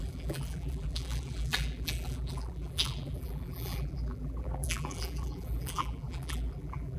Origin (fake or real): fake